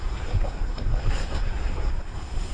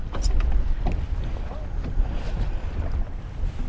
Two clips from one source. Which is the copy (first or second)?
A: first